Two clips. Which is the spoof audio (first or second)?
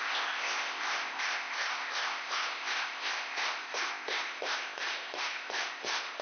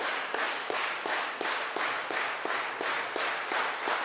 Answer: first